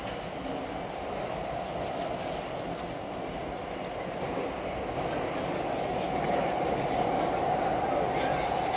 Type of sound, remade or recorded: recorded